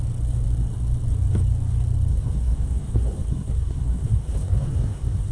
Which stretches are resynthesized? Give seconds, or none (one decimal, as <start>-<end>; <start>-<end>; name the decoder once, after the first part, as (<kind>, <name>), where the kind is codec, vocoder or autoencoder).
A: 2.1-5.3 (codec, SNAC)